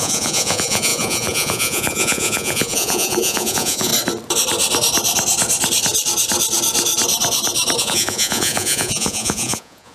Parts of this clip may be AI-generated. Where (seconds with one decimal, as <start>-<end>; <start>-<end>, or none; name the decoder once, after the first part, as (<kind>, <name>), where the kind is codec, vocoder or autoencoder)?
0.0-3.9 (vocoder, Vocos); 7.8-9.9